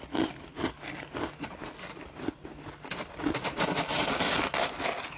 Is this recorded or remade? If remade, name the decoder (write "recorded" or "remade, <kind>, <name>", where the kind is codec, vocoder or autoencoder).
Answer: recorded